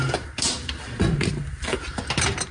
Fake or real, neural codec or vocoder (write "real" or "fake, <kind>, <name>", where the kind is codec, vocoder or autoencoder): fake, vocoder, BigVGAN v2